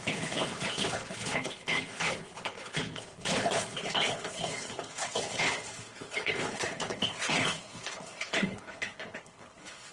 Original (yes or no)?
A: no